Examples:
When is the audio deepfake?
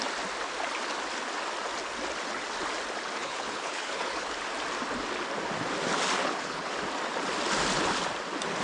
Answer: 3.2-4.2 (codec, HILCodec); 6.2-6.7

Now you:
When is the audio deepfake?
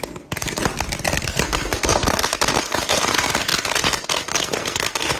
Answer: 0.0-0.6 (codec, SNAC); 1.2-5.2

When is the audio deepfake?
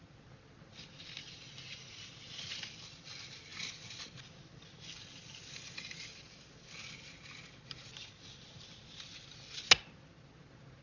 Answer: none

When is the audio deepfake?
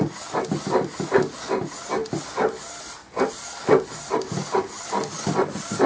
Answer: none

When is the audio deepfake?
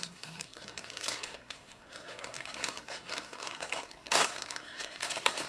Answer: 0.0-5.5 (codec, SNAC)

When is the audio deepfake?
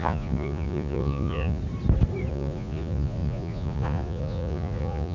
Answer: 0.0-1.6 (vocoder, Vocos); 2.3-5.1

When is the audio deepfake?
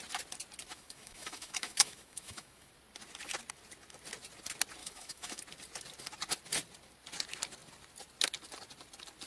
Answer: 0.7-2.7 (autoencoder, DAC-VAE); 4.8-5.4